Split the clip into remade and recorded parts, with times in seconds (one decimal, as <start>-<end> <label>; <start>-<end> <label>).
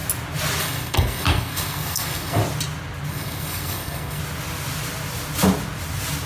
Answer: 0.0-0.6 recorded; 0.6-2.4 remade; 2.4-3.1 recorded; 3.1-4.2 remade; 4.2-6.3 recorded